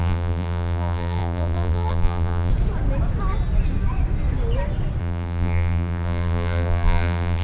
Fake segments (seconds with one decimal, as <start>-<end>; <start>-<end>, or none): 0.0-2.5; 5.0-7.4